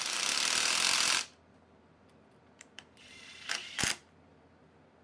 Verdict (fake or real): fake